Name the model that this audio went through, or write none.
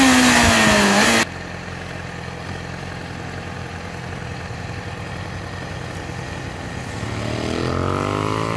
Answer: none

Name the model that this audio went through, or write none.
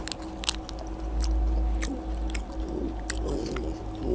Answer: none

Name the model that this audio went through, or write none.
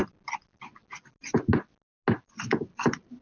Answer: none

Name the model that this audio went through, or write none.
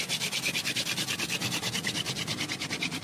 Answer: none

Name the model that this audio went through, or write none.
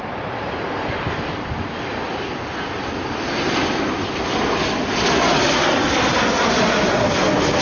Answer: none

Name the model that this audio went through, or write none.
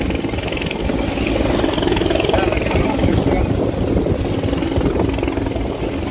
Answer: none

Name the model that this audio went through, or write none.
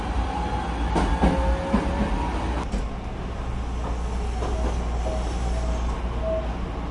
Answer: none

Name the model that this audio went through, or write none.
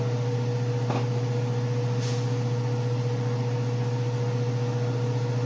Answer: none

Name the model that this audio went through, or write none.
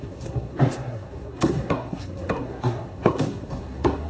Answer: codec, SNAC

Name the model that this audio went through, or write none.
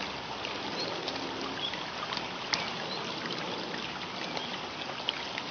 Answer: none